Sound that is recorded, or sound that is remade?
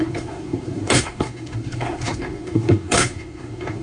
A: remade